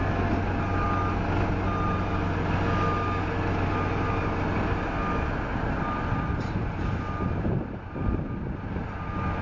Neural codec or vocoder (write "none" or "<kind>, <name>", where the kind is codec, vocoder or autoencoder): none